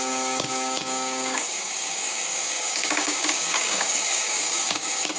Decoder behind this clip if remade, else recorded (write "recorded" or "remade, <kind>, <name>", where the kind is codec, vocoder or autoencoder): remade, codec, DAC